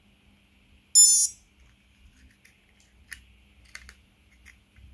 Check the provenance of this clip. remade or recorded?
recorded